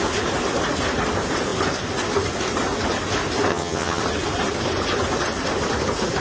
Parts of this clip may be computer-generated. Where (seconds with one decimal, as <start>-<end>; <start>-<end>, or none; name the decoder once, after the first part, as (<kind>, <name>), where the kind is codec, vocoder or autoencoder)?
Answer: 3.5-4.0 (vocoder, HiFi-GAN)